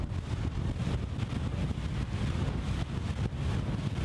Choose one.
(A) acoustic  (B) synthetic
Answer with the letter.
A